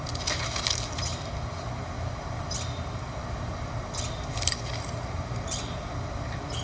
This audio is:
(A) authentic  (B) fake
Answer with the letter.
A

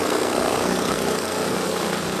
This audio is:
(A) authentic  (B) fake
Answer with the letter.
B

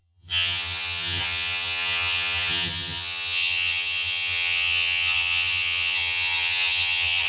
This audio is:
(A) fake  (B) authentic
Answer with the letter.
A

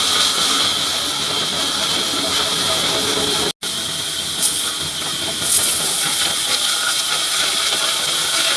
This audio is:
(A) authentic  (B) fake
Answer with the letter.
A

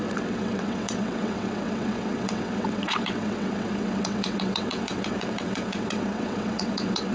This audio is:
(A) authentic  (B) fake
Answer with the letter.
B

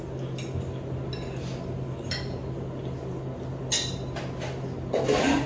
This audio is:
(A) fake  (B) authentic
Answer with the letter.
B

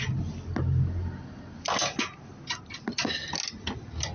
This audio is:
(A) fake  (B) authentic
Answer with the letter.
B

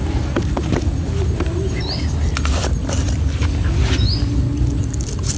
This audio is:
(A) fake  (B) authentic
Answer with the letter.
B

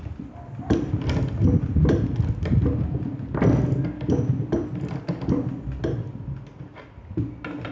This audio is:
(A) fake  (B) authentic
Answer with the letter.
B